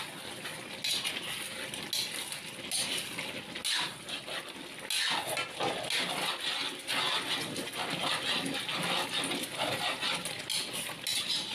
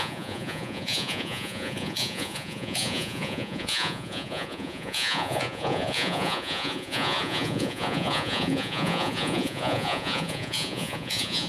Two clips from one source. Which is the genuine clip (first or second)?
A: first